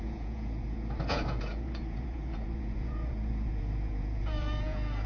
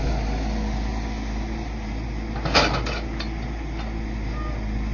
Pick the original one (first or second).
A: second